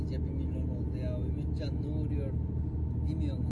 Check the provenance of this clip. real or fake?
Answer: real